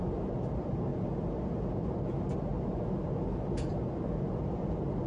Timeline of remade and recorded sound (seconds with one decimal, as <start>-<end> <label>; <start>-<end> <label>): 0.0-5.1 recorded